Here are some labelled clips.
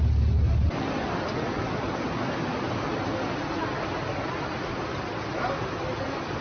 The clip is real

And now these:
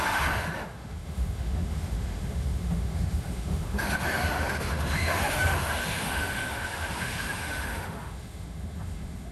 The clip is fake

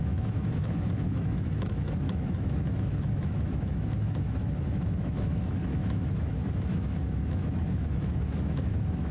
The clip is fake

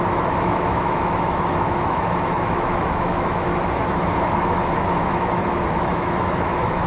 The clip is fake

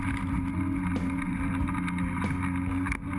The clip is real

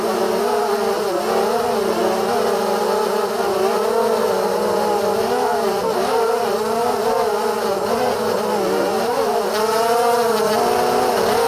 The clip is real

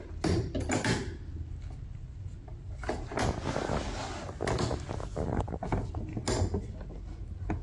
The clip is real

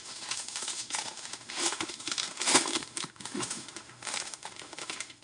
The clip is fake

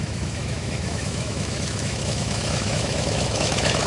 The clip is fake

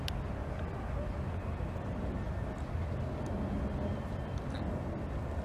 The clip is real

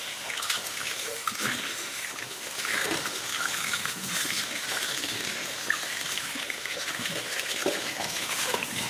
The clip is fake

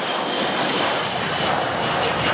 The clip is real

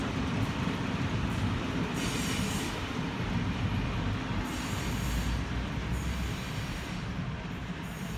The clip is real